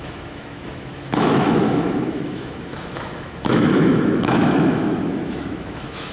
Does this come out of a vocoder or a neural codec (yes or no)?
yes